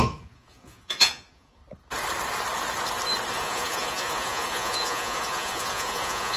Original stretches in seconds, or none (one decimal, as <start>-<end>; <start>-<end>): 1.6-3.3